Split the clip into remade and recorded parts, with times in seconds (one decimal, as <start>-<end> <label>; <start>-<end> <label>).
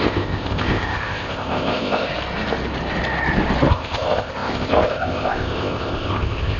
0.0-2.1 remade; 2.1-3.7 recorded; 3.7-6.6 remade